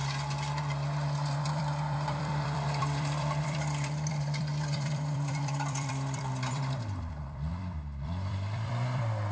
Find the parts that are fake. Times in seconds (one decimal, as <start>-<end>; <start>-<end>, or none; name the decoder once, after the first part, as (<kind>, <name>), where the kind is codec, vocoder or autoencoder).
1.4-9.3 (vocoder, BigVGAN v2)